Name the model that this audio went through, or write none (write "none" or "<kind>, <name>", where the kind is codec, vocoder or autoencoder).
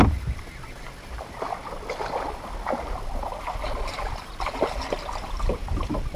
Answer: none